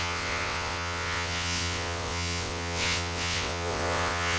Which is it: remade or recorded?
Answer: remade